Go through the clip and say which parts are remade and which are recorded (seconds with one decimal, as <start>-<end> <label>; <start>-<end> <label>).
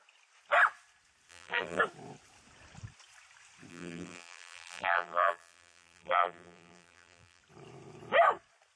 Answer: 0.0-1.3 recorded; 1.3-1.8 remade; 1.8-3.7 recorded; 3.7-7.4 remade; 7.4-8.8 recorded